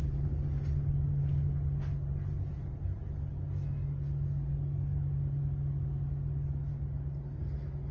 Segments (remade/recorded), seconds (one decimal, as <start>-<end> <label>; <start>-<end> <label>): 0.0-7.9 recorded